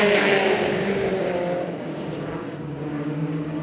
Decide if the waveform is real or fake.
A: fake